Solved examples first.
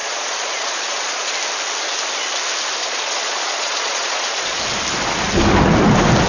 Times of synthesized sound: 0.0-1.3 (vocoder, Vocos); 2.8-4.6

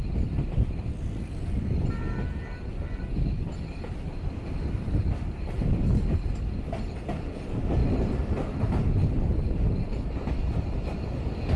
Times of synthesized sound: none

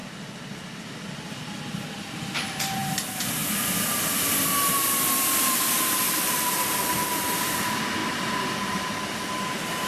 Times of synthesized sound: none

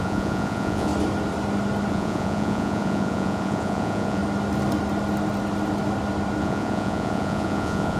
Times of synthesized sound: 0.0-0.9 (vocoder, Vocos); 1.9-4.2; 6.4-8.0

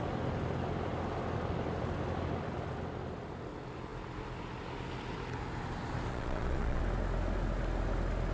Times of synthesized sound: 6.1-6.8 (vocoder, Vocos)

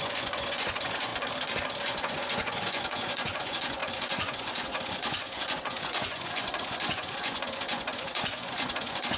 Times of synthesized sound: 0.0-1.1 (vocoder, Vocos); 1.8-9.2